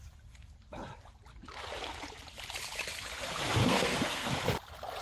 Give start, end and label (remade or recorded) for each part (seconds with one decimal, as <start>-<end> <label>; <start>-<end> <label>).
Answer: 0.0-3.6 recorded; 3.6-4.3 remade; 4.3-5.0 recorded